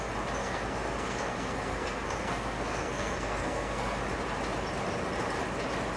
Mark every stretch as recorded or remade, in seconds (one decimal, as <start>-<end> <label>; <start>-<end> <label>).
0.0-0.4 recorded; 0.4-4.0 remade; 4.0-6.0 recorded